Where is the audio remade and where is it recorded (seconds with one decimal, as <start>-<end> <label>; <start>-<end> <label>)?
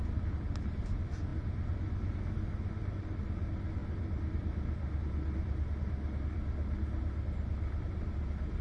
0.0-8.6 recorded